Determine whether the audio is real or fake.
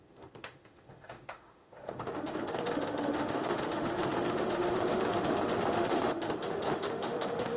fake